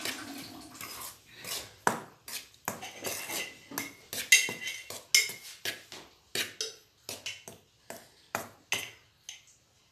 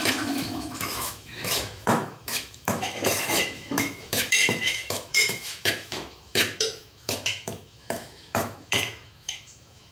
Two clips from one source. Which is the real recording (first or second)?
first